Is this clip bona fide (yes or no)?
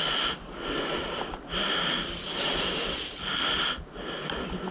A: yes